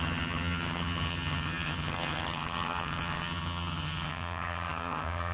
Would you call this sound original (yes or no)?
no